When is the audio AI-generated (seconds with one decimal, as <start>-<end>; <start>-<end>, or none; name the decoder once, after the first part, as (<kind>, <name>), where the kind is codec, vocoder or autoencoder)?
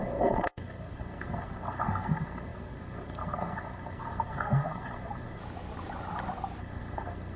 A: 0.0-5.4 (codec, SNAC); 6.6-7.4